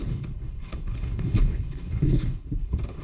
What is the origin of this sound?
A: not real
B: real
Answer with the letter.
A